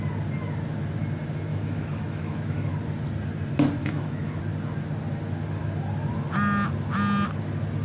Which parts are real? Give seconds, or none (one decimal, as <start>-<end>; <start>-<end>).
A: 0.0-1.5; 2.7-3.8; 4.4-7.8